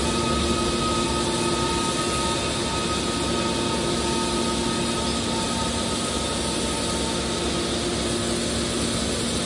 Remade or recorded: recorded